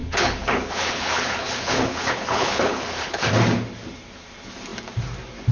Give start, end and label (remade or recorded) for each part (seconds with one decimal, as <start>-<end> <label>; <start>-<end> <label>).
0.0-3.3 remade; 3.3-5.5 recorded